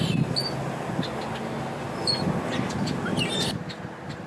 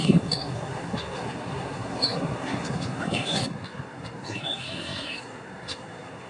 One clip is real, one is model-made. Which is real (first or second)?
first